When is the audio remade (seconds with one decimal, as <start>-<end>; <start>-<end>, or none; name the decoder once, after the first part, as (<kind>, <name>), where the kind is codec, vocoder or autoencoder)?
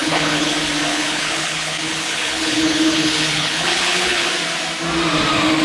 0.0-0.5 (codec, HILCodec); 0.9-4.3